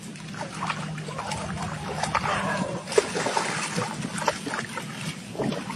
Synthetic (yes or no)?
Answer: no